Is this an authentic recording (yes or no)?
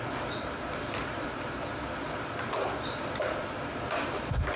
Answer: no